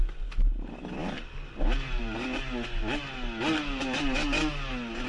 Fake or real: real